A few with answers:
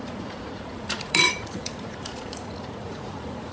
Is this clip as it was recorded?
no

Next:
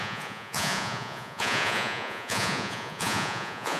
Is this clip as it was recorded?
no